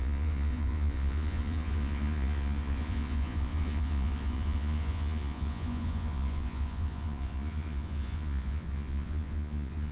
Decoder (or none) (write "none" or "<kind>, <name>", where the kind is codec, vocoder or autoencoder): vocoder, Vocos